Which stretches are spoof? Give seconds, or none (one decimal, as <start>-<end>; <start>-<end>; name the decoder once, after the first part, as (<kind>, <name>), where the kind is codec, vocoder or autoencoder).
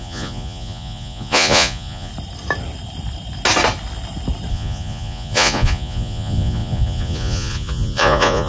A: 0.0-2.1 (vocoder, Vocos); 4.5-8.5